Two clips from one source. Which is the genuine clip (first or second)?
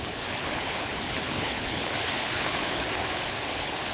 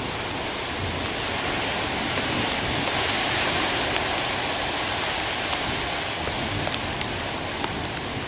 second